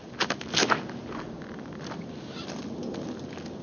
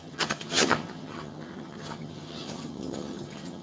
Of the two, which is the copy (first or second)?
second